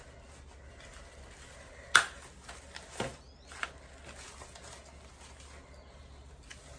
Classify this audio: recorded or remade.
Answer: recorded